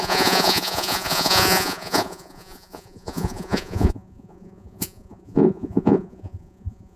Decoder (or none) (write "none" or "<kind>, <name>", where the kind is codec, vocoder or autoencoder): vocoder, Vocos